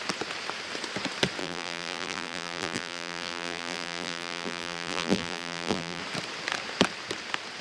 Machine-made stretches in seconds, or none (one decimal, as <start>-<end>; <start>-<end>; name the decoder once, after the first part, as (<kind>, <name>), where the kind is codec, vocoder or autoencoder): 1.4-6.0 (vocoder, BigVGAN v2)